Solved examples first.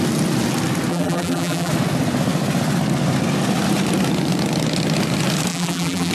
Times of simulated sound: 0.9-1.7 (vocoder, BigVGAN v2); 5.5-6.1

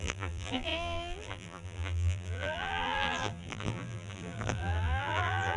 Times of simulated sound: 0.0-5.6 (vocoder, BigVGAN v2)

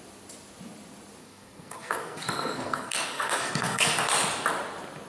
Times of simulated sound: 1.2-4.0 (codec, SNAC)

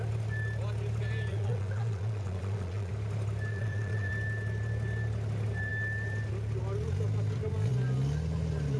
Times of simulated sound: 1.3-2.9 (vocoder, Vocos); 3.5-4.1

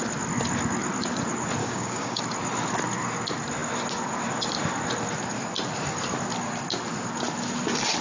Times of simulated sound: 1.6-2.2 (codec, DAC)

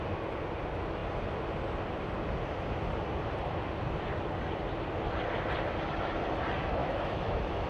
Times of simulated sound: 6.8-7.7 (autoencoder, DAC-VAE)